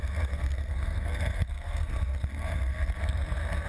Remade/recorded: remade